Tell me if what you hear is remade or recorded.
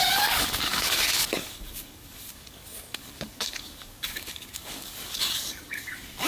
remade